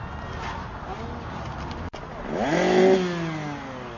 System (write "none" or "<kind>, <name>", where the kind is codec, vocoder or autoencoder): none